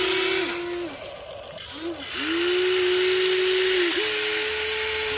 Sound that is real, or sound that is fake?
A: real